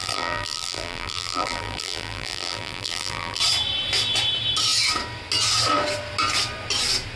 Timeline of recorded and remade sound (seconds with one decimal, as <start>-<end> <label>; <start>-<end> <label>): 0.0-3.4 remade; 3.4-7.2 recorded